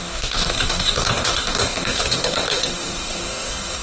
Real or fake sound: fake